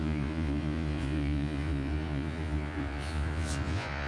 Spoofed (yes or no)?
yes